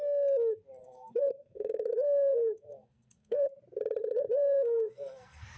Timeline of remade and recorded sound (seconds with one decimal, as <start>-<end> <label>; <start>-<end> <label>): 0.0-0.8 recorded; 0.8-3.6 remade; 3.6-4.0 recorded; 4.0-5.6 remade

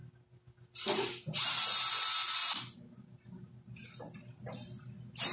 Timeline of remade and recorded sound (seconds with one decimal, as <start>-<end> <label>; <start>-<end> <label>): 0.0-2.4 recorded; 2.4-3.9 remade; 3.9-5.3 recorded

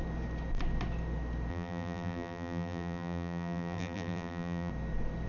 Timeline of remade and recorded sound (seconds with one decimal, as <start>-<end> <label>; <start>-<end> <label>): 0.0-1.5 recorded; 1.5-4.7 remade; 4.7-5.3 recorded

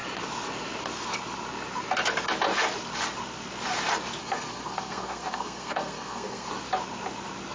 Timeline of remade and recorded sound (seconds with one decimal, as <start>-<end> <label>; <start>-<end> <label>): 0.0-4.2 recorded; 4.2-6.5 remade; 6.5-7.5 recorded

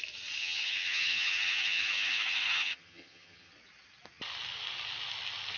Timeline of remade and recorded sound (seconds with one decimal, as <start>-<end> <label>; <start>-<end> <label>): 0.0-0.4 recorded; 0.4-3.5 remade; 3.5-5.6 recorded